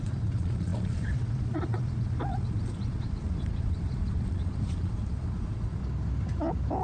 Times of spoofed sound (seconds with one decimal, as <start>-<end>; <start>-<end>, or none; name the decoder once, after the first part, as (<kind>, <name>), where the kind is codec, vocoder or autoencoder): 0.0-5.8 (vocoder, Vocos)